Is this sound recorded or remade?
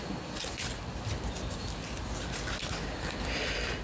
recorded